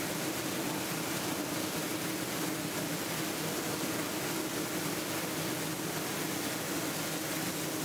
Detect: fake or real real